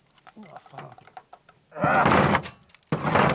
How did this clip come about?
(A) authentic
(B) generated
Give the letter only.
A